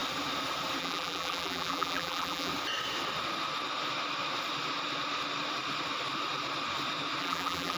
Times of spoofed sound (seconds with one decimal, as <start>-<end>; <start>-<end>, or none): 0.8-2.5; 7.2-7.8